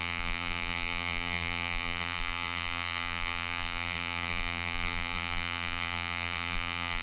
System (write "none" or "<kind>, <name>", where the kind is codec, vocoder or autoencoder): vocoder, BigVGAN v2